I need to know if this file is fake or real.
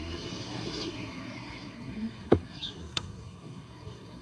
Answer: fake